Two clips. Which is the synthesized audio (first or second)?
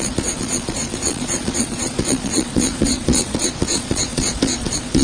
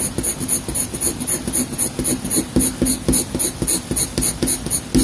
first